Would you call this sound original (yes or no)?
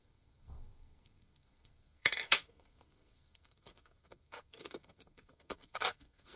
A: no